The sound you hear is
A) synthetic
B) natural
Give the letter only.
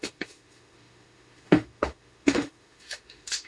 A